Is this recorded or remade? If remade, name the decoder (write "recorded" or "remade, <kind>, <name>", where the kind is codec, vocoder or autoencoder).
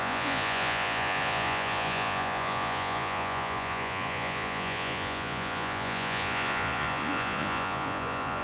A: remade, vocoder, Vocos